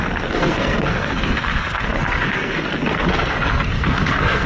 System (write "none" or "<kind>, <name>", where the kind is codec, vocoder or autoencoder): codec, SNAC